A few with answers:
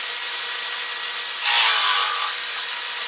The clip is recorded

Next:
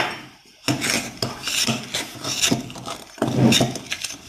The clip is recorded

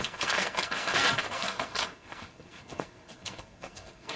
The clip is remade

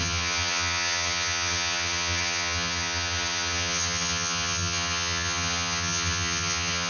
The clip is remade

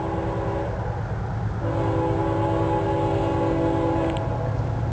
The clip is recorded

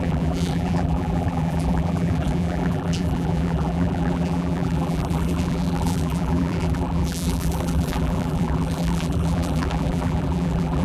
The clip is remade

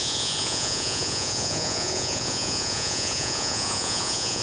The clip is remade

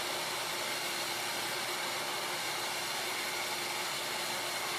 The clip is remade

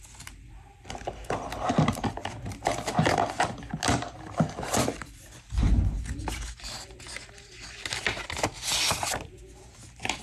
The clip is recorded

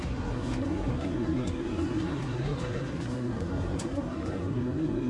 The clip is remade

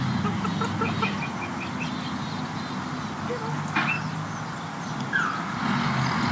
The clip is recorded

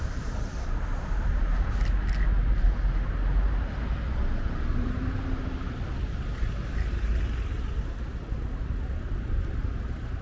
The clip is recorded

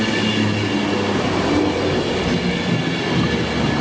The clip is recorded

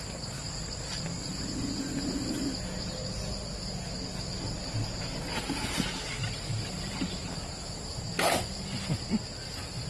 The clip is recorded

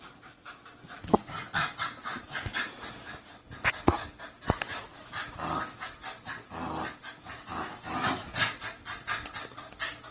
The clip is recorded